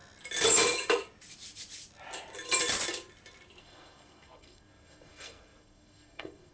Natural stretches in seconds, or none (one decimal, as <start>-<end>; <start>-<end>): 0.0-3.6